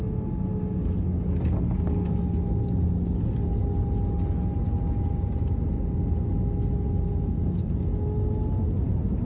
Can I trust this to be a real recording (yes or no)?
yes